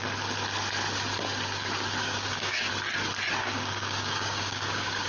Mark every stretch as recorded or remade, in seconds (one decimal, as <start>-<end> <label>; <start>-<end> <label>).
0.0-2.0 recorded; 2.0-2.7 remade; 2.7-3.4 recorded; 3.4-5.1 remade